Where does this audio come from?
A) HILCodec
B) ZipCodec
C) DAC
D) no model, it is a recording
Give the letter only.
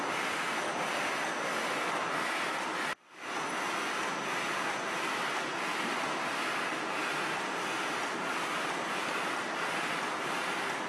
D